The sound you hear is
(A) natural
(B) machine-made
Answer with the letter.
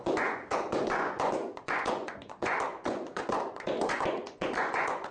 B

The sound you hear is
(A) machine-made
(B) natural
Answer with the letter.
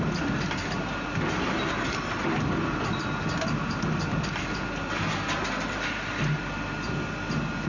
B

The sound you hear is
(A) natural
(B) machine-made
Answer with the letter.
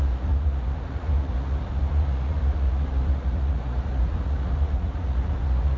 B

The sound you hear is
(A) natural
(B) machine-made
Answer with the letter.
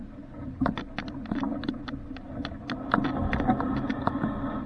A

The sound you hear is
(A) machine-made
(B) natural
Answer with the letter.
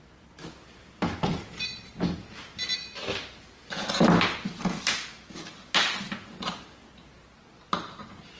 B